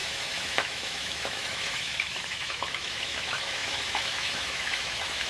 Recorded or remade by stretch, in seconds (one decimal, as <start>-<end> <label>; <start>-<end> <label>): 0.0-5.3 remade